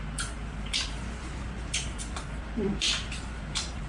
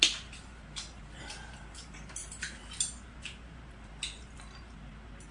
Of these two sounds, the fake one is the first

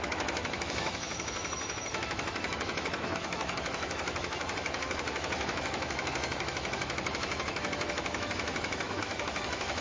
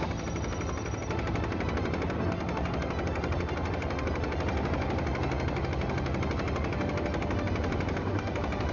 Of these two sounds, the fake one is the first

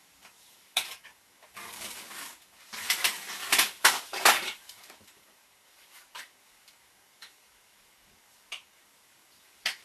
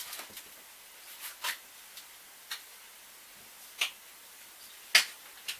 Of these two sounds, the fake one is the first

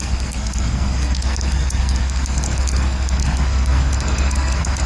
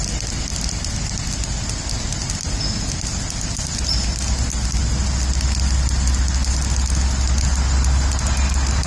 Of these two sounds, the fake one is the first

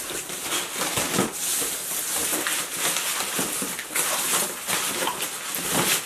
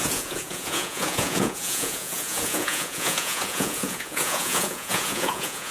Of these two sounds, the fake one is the second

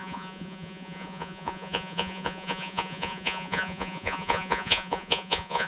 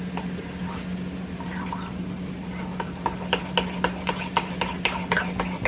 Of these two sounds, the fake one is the first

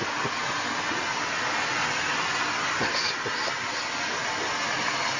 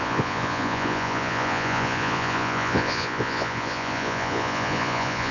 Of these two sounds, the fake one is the second